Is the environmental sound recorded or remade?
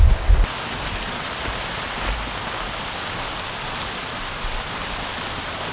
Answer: recorded